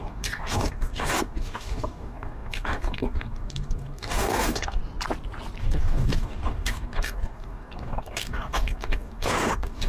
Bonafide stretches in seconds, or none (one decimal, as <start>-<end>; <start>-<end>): 4.8-5.6